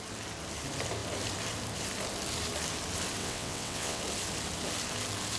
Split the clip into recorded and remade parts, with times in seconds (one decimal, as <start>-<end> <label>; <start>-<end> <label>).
0.0-3.2 recorded; 3.2-4.0 remade; 4.0-5.4 recorded